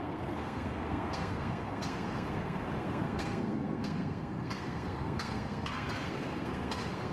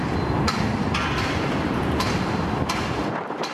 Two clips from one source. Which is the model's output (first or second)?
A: first